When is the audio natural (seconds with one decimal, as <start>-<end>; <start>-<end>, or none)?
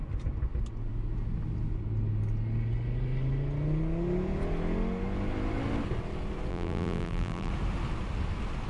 0.0-6.5; 7.5-8.7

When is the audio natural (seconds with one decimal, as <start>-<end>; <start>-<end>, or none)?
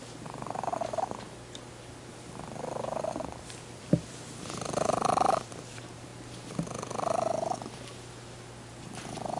0.7-3.7; 6.1-8.7